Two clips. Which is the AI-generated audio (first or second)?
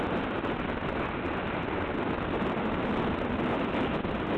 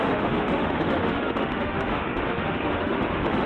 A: second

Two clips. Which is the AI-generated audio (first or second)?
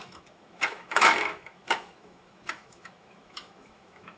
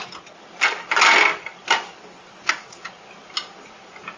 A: first